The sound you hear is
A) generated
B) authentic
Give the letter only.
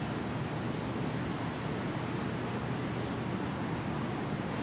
B